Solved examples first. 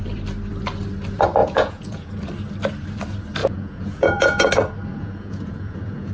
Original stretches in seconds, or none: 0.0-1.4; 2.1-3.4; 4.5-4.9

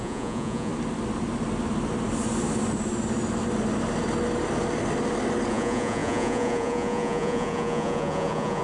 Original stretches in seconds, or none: 0.7-5.5

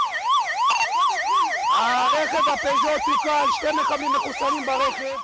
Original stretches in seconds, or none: 0.0-5.2

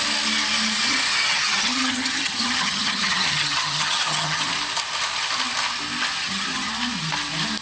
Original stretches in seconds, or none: 0.0-1.1; 4.5-6.2; 6.7-7.6

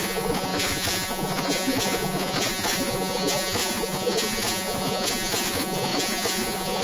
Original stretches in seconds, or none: none

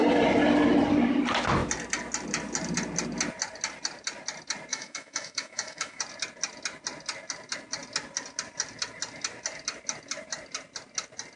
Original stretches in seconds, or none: 0.0-4.7; 6.0-11.4